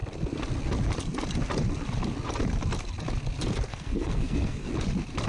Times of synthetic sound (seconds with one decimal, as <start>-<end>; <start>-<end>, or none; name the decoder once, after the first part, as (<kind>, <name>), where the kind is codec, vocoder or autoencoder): 3.7-4.7 (codec, SNAC)